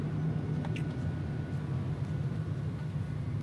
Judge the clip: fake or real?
real